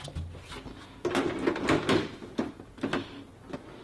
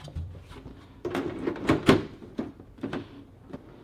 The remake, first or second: second